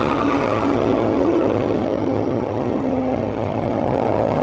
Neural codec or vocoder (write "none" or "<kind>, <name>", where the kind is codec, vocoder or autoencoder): vocoder, HiFi-GAN